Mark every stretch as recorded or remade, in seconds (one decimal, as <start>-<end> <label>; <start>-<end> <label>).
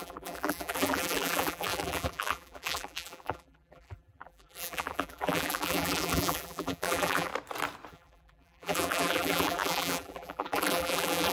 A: 0.0-7.3 remade; 7.3-7.9 recorded; 7.9-11.3 remade